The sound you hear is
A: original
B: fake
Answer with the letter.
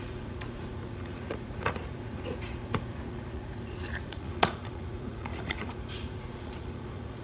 B